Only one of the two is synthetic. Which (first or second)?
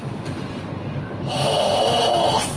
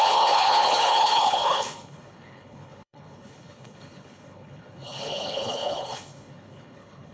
second